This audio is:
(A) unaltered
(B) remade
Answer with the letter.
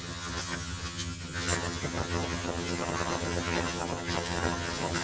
B